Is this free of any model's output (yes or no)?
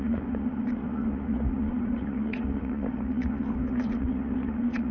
no